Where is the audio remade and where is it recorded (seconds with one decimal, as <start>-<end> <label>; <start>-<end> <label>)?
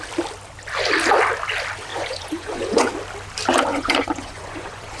0.0-1.9 recorded; 1.9-2.9 remade; 2.9-3.7 recorded; 3.7-5.0 remade